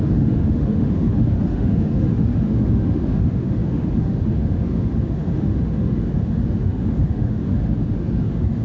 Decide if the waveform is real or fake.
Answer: fake